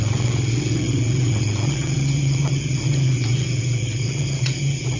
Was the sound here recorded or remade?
remade